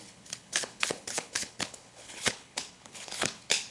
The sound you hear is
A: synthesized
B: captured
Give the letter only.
A